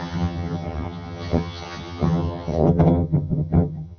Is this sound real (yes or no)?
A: no